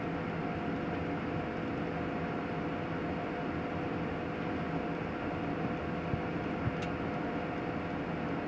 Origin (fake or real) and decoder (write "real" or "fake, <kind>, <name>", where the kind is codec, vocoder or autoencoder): real